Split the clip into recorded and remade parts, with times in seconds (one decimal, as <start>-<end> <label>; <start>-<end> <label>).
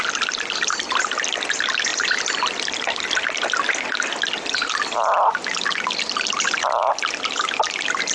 0.0-8.1 recorded